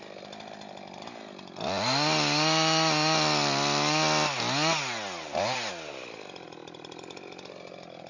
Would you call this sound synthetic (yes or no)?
no